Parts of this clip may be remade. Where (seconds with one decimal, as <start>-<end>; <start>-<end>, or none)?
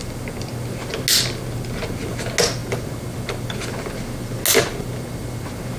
none